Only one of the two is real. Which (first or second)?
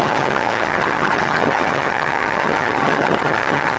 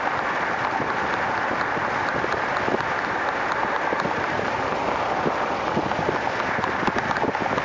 second